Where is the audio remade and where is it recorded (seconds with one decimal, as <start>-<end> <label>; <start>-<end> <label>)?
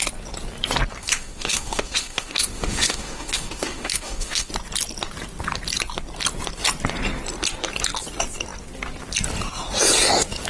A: 0.0-1.0 recorded; 1.0-4.5 remade; 4.5-10.5 recorded